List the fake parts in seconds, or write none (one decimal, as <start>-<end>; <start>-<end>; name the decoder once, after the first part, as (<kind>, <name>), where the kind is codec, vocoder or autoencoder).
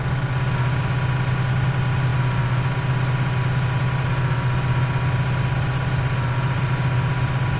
none